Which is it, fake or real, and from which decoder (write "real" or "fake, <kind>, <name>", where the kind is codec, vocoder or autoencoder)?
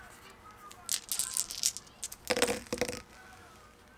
real